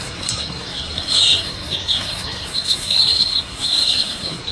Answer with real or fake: fake